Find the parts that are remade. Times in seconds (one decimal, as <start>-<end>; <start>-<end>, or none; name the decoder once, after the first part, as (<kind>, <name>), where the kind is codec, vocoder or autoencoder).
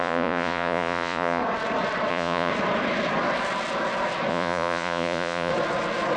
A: 0.0-1.4 (vocoder, Vocos); 2.1-2.5; 4.3-5.5